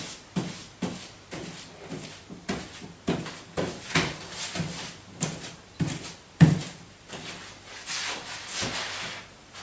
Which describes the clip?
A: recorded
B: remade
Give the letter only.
A